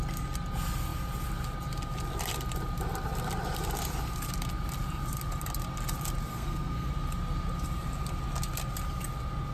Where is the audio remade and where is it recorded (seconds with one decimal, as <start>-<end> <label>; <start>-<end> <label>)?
0.0-6.3 recorded; 6.3-6.9 remade; 6.9-9.5 recorded